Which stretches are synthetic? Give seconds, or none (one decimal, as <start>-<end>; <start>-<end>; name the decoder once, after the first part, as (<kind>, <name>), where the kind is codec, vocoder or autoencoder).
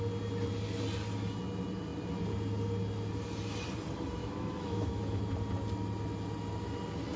4.2-5.2 (autoencoder, DAC-VAE)